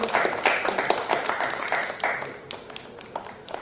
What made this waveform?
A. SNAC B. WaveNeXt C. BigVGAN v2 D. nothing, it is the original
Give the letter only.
C